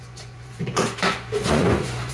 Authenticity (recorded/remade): remade